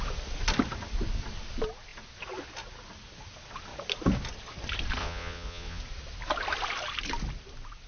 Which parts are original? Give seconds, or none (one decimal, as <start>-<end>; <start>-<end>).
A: 0.0-5.0; 5.8-7.9